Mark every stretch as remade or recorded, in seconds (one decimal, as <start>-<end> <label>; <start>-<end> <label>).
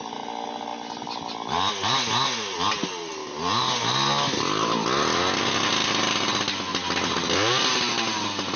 0.0-8.6 recorded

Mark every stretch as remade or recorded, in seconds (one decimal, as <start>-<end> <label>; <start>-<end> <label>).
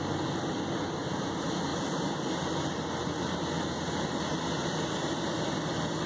0.0-6.1 recorded